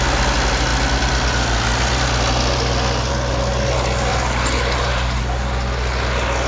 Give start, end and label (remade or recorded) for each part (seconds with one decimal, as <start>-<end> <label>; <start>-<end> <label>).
0.0-4.1 recorded; 4.1-5.2 remade; 5.2-6.5 recorded

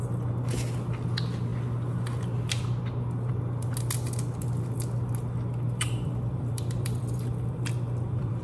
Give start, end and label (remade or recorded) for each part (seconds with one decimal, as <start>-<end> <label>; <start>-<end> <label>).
0.0-5.7 recorded; 5.7-8.4 remade

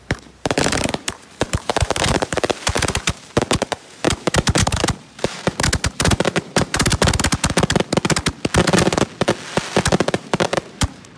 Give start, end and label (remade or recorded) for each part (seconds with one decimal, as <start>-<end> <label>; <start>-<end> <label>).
0.0-6.9 remade; 6.9-10.1 recorded; 10.1-11.2 remade

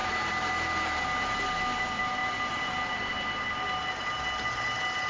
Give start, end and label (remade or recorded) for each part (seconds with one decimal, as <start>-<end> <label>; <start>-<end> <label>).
0.0-0.5 remade; 0.5-2.2 recorded; 2.2-3.1 remade; 3.1-5.1 recorded

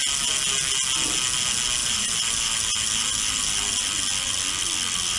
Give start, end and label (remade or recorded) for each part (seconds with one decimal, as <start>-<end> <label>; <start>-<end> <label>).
0.0-1.8 recorded; 1.8-5.2 remade

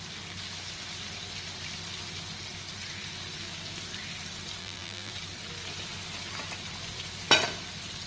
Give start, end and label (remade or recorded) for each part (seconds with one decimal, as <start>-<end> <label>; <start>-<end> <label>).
0.0-4.6 recorded; 4.6-5.1 remade; 5.1-8.1 recorded

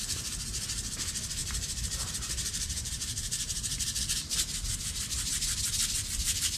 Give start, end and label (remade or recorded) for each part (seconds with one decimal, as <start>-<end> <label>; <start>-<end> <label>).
0.0-1.4 recorded; 1.4-4.0 remade; 4.0-6.6 recorded